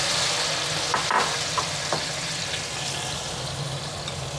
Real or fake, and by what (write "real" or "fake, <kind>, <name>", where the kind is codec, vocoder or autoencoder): real